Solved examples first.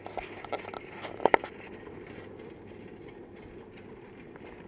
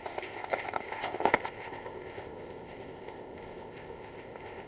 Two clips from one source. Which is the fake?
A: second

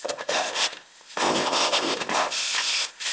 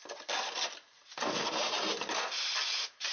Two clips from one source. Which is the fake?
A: first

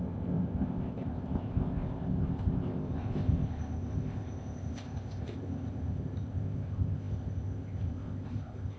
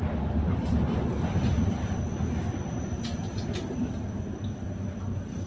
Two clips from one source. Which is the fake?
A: first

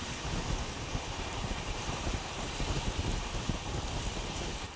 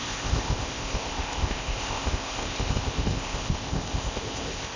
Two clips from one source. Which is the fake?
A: second